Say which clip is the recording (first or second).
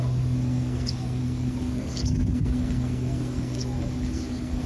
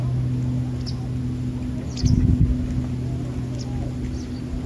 second